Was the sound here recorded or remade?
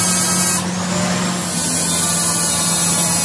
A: recorded